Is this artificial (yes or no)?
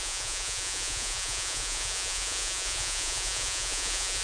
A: yes